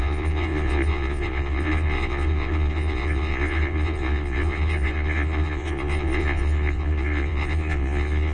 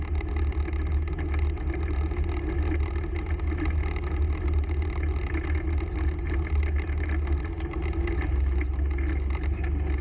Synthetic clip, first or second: first